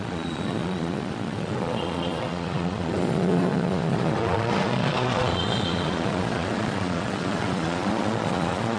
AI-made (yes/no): yes